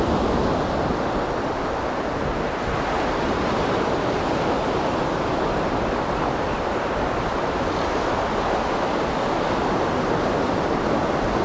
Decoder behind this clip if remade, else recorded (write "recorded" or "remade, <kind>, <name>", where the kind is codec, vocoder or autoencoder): recorded